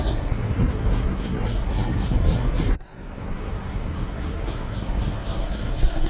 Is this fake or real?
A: fake